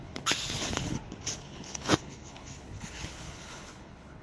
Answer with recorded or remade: remade